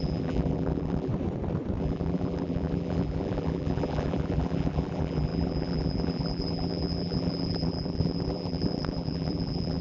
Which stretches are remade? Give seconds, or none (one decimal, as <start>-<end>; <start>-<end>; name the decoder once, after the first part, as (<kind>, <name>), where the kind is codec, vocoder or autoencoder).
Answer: 0.0-1.1 (vocoder, BigVGAN v2); 1.8-9.8

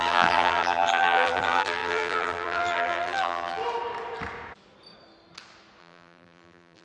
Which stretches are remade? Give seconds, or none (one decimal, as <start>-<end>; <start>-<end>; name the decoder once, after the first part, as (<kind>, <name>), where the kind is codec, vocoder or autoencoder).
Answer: 0.0-3.6 (vocoder, BigVGAN v2); 5.8-6.8

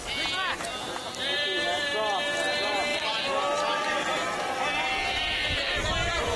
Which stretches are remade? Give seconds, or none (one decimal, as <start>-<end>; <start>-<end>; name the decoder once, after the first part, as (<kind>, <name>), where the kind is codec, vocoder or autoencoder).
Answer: none

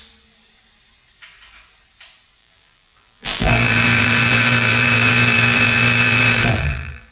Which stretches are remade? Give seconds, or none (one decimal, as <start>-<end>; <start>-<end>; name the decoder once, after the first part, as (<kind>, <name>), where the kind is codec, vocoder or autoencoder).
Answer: 2.4-7.1 (vocoder, BigVGAN v2)

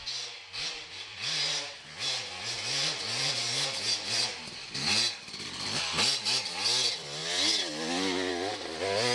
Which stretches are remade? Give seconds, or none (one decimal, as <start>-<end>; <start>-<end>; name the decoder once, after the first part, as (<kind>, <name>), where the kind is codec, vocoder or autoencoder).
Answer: none

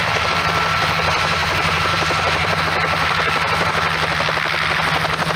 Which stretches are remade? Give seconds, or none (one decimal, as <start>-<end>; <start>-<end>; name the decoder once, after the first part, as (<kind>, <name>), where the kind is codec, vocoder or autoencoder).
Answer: 1.4-2.6 (vocoder, BigVGAN v2); 3.0-3.7

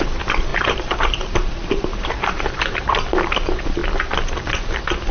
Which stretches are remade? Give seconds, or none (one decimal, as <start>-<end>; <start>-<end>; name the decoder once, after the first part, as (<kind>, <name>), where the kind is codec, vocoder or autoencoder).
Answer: 0.5-2.8 (vocoder, BigVGAN v2)

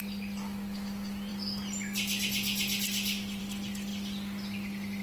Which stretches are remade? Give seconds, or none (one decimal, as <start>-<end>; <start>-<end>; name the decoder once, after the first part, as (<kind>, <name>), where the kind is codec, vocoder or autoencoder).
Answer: none